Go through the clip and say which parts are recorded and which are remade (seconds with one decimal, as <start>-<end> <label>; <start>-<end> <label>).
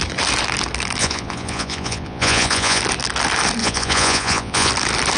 0.0-1.0 recorded; 1.0-2.8 remade; 2.8-3.6 recorded; 3.6-4.7 remade; 4.7-5.2 recorded